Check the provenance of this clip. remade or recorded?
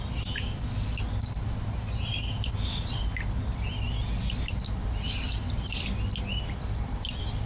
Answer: recorded